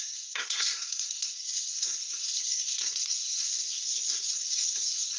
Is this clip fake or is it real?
fake